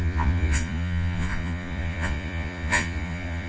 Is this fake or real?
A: fake